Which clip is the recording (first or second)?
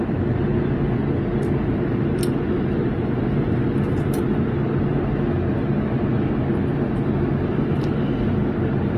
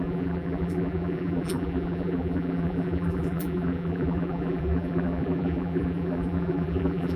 first